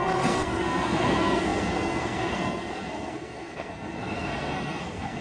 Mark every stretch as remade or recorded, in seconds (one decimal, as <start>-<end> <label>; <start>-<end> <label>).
0.0-5.2 remade